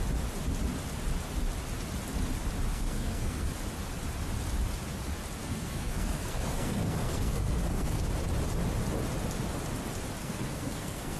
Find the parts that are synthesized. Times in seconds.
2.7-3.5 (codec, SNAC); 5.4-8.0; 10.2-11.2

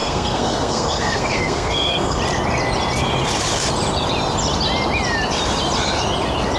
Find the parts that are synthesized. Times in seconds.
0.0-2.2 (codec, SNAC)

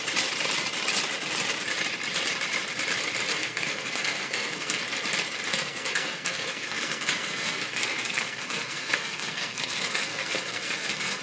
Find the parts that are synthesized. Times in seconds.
3.3-4.8 (codec, SNAC); 5.5-11.2